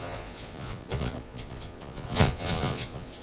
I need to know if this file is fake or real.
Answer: fake